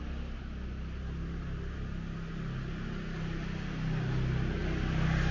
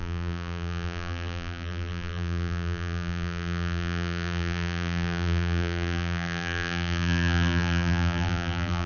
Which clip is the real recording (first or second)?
first